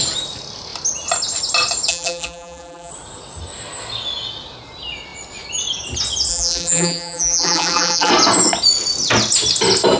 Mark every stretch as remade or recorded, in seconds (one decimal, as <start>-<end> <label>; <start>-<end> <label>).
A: 0.0-1.9 recorded; 1.9-2.9 remade; 2.9-6.3 recorded; 6.3-8.1 remade; 8.1-10.0 recorded